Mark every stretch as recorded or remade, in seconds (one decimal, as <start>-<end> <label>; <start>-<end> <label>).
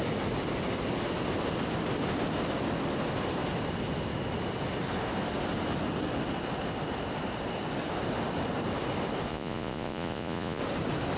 0.0-9.3 recorded; 9.3-10.6 remade; 10.6-11.2 recorded